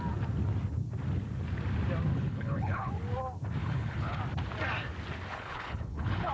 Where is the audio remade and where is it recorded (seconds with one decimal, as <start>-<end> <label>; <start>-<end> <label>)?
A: 0.0-2.1 recorded; 2.1-2.9 remade; 2.9-3.6 recorded; 3.6-4.2 remade; 4.2-5.3 recorded; 5.3-6.3 remade